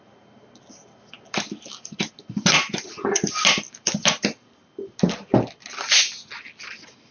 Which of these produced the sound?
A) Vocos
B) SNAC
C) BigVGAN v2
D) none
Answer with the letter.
D